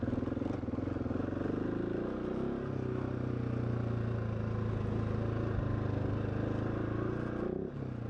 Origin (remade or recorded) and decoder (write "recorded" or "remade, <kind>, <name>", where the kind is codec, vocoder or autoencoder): recorded